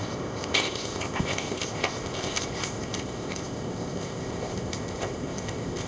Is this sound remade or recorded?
remade